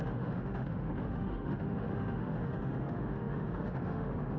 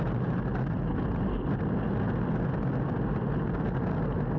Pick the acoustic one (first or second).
second